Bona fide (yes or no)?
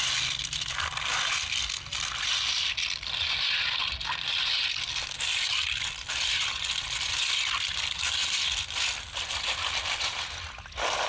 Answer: yes